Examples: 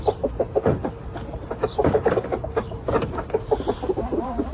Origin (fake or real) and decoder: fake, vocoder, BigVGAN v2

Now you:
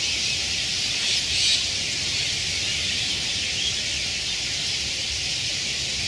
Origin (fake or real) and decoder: real